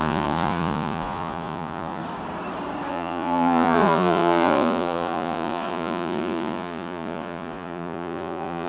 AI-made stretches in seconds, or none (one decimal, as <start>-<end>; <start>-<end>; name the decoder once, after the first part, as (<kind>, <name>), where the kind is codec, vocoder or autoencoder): 0.0-2.0 (vocoder, Vocos); 2.9-8.7